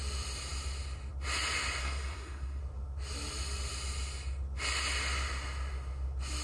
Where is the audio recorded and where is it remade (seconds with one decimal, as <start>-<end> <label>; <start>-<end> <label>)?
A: 0.0-1.8 recorded; 1.8-2.6 remade; 2.6-6.4 recorded